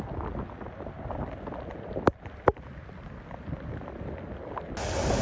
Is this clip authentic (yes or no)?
yes